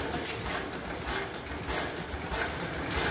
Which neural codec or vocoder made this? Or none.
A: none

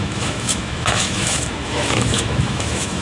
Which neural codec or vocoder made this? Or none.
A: autoencoder, DAC-VAE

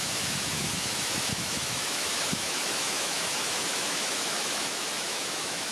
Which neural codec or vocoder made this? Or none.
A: autoencoder, DAC-VAE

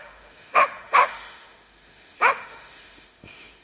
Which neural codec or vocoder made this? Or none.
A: autoencoder, DAC-VAE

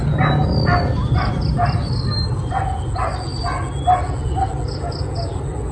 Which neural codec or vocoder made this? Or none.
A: none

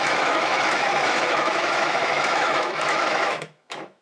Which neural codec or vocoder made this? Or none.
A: autoencoder, DAC-VAE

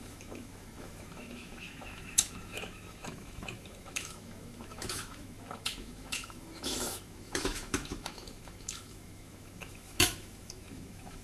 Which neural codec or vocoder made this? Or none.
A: autoencoder, DAC-VAE